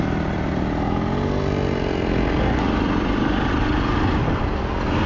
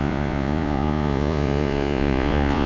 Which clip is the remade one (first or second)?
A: second